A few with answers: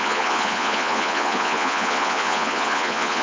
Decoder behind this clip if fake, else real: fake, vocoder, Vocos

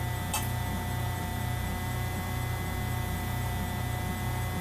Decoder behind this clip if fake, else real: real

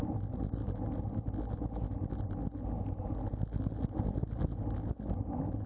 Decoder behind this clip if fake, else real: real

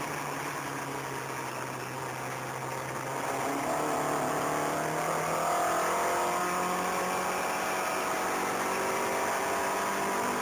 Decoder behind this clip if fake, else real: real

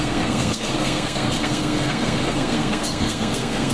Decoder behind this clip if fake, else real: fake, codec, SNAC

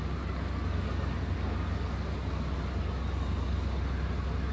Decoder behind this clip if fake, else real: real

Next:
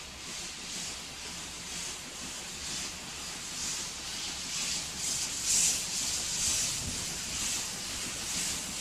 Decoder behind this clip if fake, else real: real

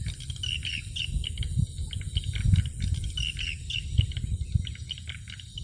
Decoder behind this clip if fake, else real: real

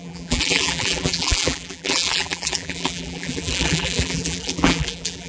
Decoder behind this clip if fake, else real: fake, vocoder, BigVGAN v2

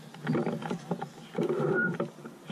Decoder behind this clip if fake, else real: fake, vocoder, BigVGAN v2